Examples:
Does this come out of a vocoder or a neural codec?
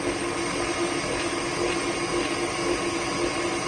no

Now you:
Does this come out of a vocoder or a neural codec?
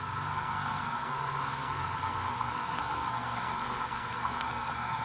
yes